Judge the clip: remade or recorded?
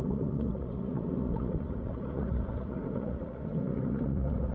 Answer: remade